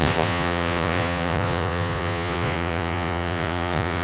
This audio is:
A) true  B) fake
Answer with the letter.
B